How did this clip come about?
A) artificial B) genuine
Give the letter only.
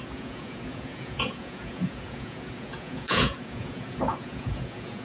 A